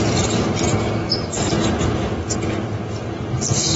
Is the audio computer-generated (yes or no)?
no